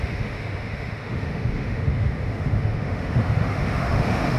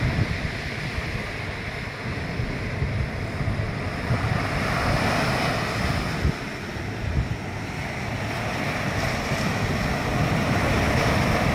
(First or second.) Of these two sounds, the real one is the second